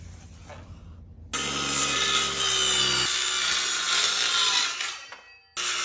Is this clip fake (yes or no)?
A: no